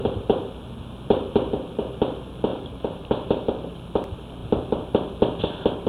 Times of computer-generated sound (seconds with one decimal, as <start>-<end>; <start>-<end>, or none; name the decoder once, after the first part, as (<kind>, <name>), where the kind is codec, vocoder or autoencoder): 2.5-3.7 (vocoder, BigVGAN v2)